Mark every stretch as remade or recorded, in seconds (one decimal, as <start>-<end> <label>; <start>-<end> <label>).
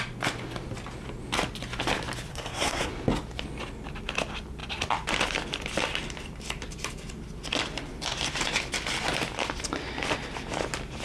0.0-2.3 recorded; 2.3-2.9 remade; 2.9-11.0 recorded